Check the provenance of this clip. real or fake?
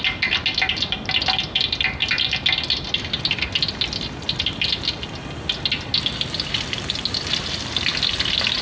real